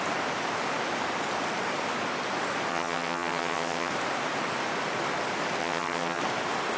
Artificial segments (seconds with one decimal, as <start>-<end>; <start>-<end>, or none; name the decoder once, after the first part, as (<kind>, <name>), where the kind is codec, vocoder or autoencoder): 2.7-3.9 (vocoder, HiFi-GAN); 5.6-6.2

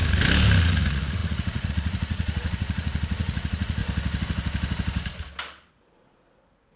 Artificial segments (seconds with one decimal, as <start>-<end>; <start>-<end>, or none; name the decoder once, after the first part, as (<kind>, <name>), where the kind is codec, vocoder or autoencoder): 0.6-3.8 (vocoder, Vocos); 5.7-6.8